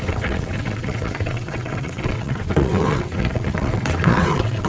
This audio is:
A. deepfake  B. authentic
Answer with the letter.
A